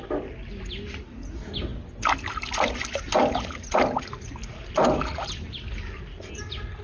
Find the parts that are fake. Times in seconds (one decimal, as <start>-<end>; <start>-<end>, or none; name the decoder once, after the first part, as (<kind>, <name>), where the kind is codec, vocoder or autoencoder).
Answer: none